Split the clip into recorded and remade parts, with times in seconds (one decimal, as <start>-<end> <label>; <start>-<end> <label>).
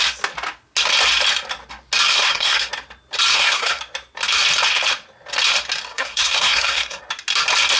0.0-2.1 recorded; 2.1-2.7 remade; 2.7-3.3 recorded; 3.3-3.8 remade; 3.8-5.9 recorded; 5.9-7.0 remade; 7.0-7.8 recorded